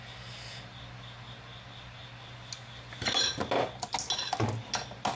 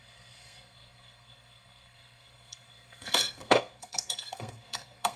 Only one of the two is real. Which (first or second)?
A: first